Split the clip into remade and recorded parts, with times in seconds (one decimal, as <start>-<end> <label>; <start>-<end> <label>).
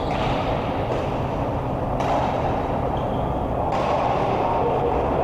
0.0-5.2 recorded